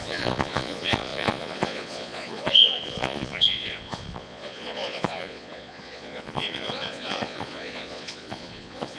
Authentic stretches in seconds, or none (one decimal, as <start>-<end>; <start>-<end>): none